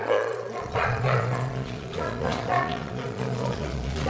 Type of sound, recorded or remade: remade